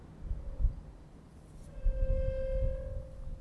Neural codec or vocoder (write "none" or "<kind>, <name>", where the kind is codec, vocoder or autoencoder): none